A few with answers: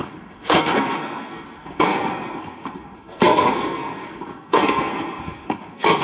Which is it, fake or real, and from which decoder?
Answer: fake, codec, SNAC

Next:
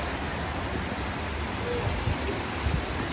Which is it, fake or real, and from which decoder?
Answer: real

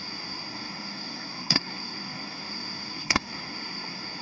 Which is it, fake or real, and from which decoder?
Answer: fake, codec, SNAC